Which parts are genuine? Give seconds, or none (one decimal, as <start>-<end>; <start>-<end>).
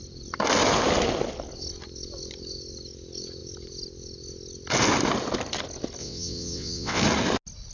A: 0.0-6.0; 7.0-7.7